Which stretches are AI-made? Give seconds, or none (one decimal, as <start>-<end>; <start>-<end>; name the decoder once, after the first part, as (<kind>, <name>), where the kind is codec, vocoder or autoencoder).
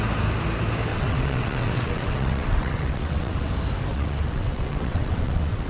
0.9-3.5 (vocoder, WaveNeXt); 3.9-5.7